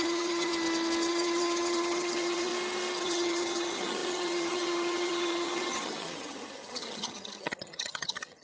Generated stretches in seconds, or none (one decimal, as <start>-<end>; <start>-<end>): 0.0-0.5; 1.1-2.5; 3.0-8.4